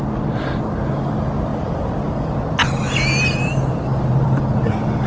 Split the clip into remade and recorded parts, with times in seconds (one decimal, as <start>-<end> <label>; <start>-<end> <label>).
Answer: 0.0-1.5 recorded; 1.5-2.2 remade; 2.2-3.5 recorded; 3.5-4.4 remade; 4.4-5.1 recorded